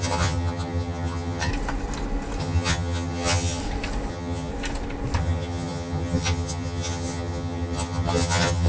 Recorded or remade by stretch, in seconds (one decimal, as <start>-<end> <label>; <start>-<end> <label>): 0.0-1.5 remade; 1.5-2.4 recorded; 2.4-3.6 remade; 3.6-4.1 recorded; 4.1-4.5 remade; 4.5-5.2 recorded; 5.2-8.7 remade